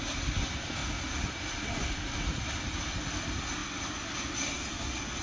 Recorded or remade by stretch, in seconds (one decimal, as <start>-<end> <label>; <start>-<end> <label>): 0.0-0.8 recorded; 0.8-2.8 remade; 2.8-5.2 recorded